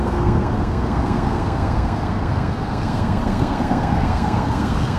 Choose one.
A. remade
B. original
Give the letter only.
A